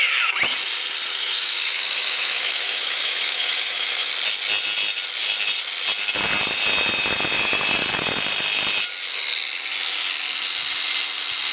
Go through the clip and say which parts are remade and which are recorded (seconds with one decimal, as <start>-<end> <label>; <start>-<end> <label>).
0.0-1.1 recorded; 1.1-4.1 remade; 4.1-11.5 recorded